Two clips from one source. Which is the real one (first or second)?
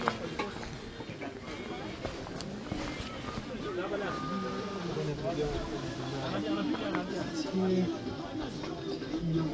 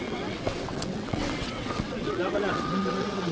first